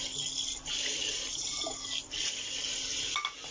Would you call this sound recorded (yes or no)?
yes